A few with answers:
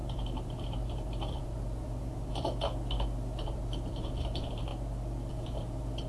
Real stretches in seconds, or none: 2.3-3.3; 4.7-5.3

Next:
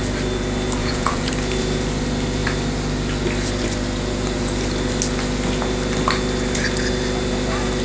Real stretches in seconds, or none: 0.0-0.8; 1.3-7.8

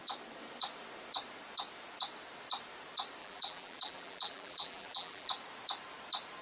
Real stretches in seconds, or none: 0.0-3.2; 5.3-6.4